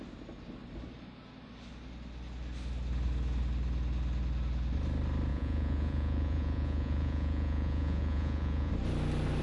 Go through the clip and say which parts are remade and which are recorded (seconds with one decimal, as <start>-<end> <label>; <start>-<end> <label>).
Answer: 0.0-5.3 recorded; 5.3-8.7 remade; 8.7-9.4 recorded